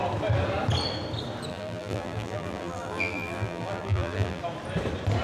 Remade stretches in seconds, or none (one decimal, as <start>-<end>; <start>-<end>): 1.5-4.4